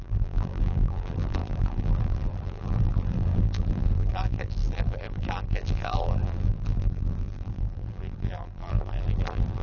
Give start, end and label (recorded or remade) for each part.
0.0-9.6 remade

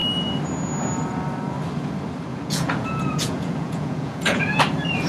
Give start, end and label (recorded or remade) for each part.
0.0-2.3 recorded; 2.3-4.6 remade; 4.6-5.1 recorded

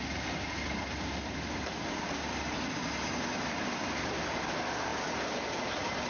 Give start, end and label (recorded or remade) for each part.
0.0-6.1 recorded

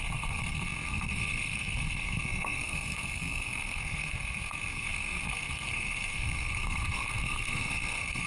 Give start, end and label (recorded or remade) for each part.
0.0-8.3 remade